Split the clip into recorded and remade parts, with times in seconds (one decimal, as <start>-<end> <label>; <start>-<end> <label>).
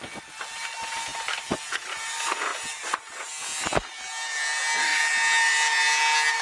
0.0-6.4 recorded